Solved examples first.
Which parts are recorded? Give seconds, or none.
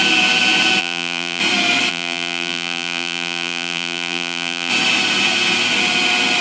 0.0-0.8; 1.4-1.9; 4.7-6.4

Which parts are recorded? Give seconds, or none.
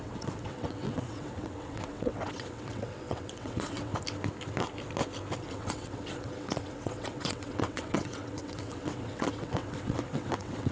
3.9-5.5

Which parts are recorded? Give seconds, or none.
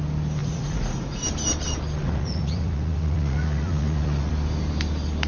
0.0-0.4; 1.2-2.0; 4.3-5.3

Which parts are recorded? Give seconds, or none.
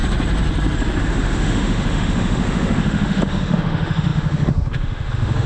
0.0-1.0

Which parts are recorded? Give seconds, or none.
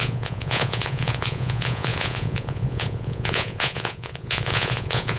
none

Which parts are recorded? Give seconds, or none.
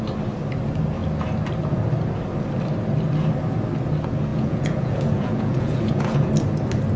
0.0-4.3; 6.3-7.0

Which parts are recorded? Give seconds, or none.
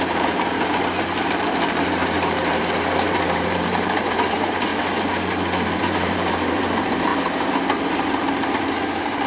4.7-5.7; 7.1-8.5